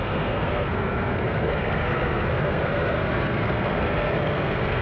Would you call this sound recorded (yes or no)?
no